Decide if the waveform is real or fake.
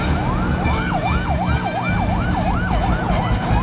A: real